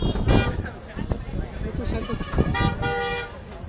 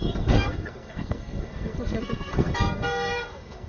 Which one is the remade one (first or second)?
second